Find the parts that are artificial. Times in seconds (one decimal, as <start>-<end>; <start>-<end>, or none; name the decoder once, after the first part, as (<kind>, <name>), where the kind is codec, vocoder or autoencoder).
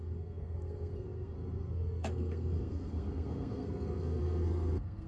0.0-5.1 (codec, SNAC)